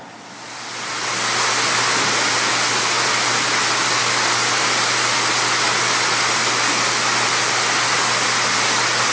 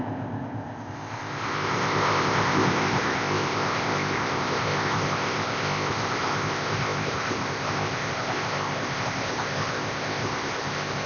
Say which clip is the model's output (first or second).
second